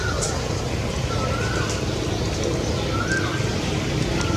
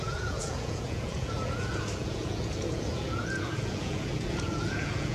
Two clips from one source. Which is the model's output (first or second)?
second